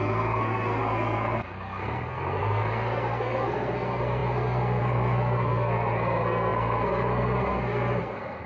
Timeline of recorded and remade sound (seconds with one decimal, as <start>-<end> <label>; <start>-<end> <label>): 0.0-8.5 remade